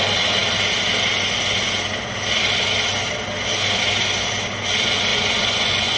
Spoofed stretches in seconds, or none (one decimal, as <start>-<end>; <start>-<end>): 5.1-6.0